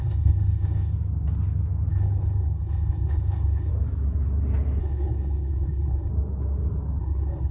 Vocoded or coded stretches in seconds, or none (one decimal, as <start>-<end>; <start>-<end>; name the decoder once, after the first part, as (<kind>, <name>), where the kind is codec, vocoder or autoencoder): 0.0-0.9 (codec, HILCodec); 1.9-3.7; 4.8-6.1; 7.0-7.5